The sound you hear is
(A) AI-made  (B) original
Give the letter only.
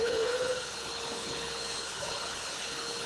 A